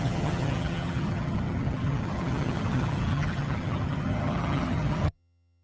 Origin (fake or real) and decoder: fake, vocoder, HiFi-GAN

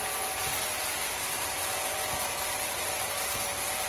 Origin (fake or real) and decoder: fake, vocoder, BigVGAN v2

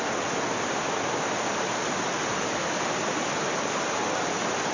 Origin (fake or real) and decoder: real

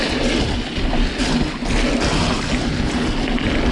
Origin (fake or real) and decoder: real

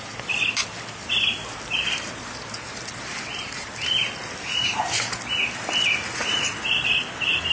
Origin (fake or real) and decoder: real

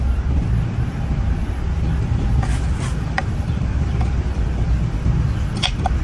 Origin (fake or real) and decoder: fake, vocoder, BigVGAN v2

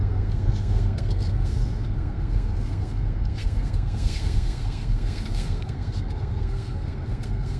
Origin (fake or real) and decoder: fake, codec, SNAC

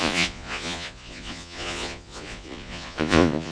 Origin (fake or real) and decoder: fake, vocoder, Vocos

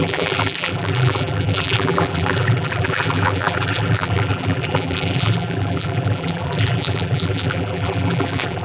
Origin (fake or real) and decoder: fake, vocoder, BigVGAN v2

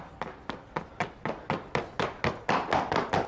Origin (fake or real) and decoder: real